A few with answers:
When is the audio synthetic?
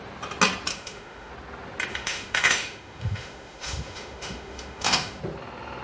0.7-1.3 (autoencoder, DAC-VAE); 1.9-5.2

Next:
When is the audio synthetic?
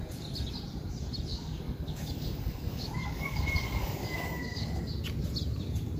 1.3-4.9 (codec, DAC)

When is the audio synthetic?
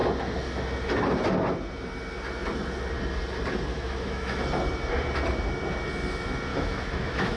3.7-4.4 (autoencoder, DAC-VAE); 6.5-7.4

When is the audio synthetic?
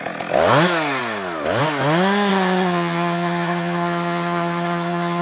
2.3-5.2 (vocoder, HiFi-GAN)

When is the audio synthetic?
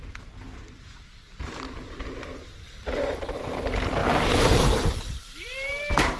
2.5-3.5 (vocoder, BigVGAN v2); 4.0-6.2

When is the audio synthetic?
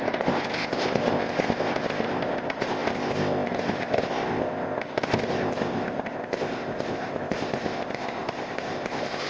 0.0-9.3 (codec, ZipCodec)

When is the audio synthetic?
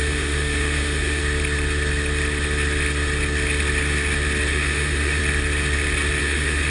0.0-1.2 (autoencoder, DAC-VAE); 4.5-5.2; 6.2-6.7